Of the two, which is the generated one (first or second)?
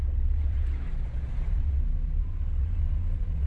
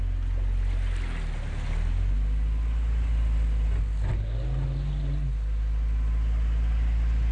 first